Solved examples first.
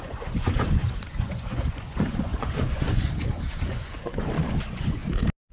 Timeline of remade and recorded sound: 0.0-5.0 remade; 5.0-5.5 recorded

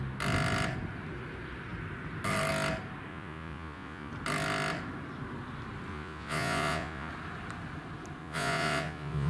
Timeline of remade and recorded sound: 0.0-3.1 recorded; 3.1-4.1 remade; 4.1-5.9 recorded; 5.9-7.1 remade; 7.1-8.2 recorded; 8.2-9.3 remade